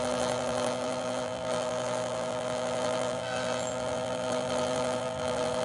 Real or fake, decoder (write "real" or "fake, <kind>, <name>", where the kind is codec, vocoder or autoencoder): fake, vocoder, BigVGAN v2